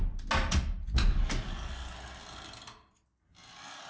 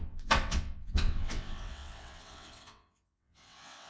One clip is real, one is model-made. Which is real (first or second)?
first